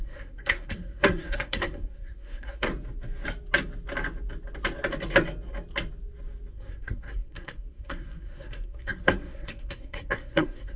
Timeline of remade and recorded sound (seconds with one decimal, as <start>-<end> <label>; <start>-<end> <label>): 0.0-2.7 remade; 2.7-6.5 recorded; 6.5-10.8 remade